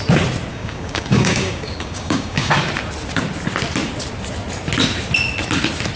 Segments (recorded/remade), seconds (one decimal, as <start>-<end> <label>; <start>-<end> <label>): 0.0-0.5 recorded; 0.5-2.5 remade; 2.5-6.0 recorded